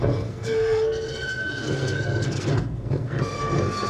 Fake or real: fake